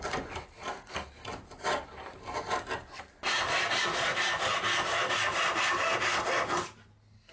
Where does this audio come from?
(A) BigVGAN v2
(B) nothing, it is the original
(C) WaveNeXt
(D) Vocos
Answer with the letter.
B